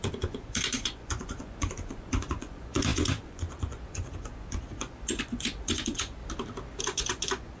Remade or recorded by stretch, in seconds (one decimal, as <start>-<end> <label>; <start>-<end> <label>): 0.0-6.2 remade; 6.2-6.8 recorded; 6.8-7.6 remade

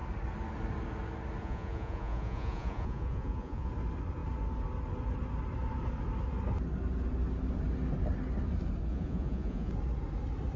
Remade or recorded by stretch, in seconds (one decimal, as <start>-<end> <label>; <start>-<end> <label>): 0.0-1.4 recorded; 1.4-3.7 remade; 3.7-8.9 recorded; 8.9-9.7 remade; 9.7-10.6 recorded

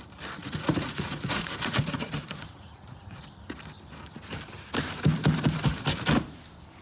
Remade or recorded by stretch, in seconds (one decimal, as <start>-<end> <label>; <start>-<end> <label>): 0.0-0.4 recorded; 0.4-3.2 remade; 3.2-6.8 recorded

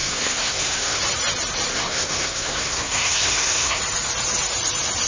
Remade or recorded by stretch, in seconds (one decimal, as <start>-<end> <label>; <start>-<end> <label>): 0.0-1.0 remade; 1.0-1.7 recorded; 1.7-3.8 remade; 3.8-5.1 recorded

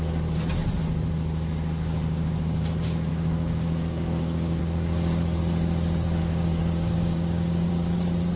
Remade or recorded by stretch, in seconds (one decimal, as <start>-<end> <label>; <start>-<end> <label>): 0.0-3.1 recorded; 3.1-4.6 remade; 4.6-6.2 recorded; 6.2-7.7 remade; 7.7-8.4 recorded